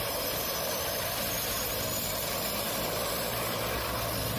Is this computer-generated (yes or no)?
yes